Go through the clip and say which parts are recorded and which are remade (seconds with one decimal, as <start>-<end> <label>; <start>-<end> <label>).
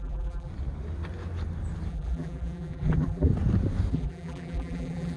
0.0-0.5 remade; 0.5-1.9 recorded; 1.9-3.3 remade; 3.3-3.9 recorded; 3.9-5.2 remade